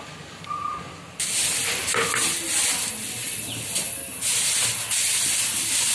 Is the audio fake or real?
real